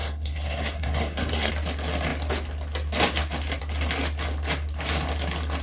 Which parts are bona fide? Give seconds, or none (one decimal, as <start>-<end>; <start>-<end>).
1.5-5.6